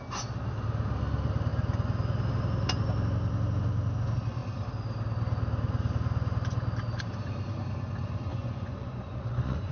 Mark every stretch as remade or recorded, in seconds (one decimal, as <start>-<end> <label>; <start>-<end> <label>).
0.0-8.3 recorded; 8.3-9.7 remade